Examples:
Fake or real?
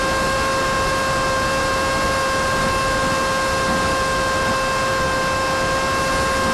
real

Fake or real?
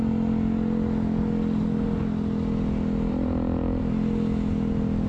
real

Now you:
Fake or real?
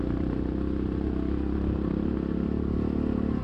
fake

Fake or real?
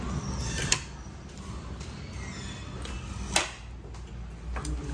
real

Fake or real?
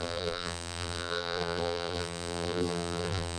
fake